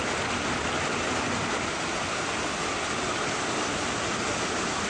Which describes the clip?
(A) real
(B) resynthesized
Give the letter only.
A